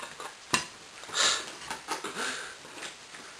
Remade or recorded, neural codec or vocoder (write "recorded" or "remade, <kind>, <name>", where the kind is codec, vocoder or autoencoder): recorded